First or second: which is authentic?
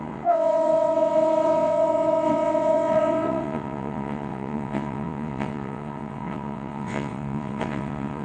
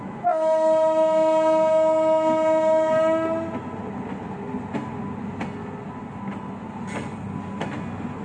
second